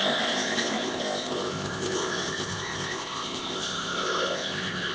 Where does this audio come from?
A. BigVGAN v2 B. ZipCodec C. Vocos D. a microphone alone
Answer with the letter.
B